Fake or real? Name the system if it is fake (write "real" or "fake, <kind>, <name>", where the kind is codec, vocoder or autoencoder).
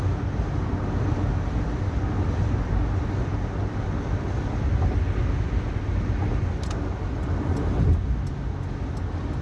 real